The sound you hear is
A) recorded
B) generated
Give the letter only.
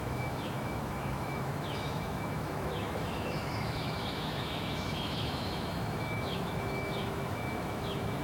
B